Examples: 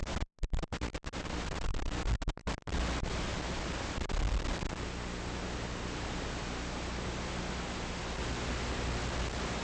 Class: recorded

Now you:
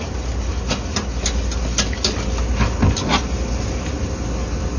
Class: recorded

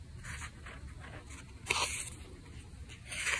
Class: recorded